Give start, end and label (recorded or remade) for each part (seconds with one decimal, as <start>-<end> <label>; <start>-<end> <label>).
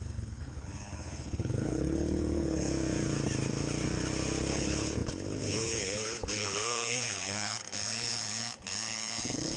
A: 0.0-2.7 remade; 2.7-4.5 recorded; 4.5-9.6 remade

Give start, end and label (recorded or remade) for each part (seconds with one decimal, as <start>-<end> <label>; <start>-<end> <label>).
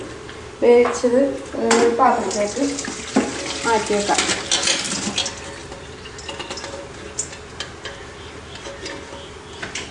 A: 0.0-9.9 recorded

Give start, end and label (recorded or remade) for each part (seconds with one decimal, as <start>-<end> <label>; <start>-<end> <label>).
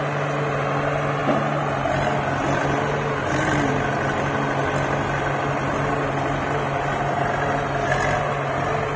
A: 0.0-9.0 recorded